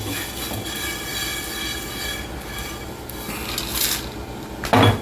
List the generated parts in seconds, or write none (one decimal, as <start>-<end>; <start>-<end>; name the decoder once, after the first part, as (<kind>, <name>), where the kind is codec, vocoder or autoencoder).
none

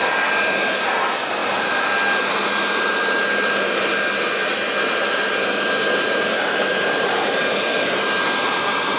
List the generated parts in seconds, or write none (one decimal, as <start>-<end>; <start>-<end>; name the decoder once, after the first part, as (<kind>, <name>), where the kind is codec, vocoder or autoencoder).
6.3-8.0 (vocoder, BigVGAN v2)

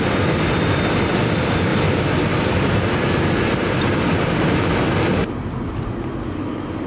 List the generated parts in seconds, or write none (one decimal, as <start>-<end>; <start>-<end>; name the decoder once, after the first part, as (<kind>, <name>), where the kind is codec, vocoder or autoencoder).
none